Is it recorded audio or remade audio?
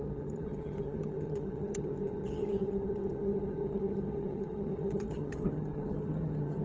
remade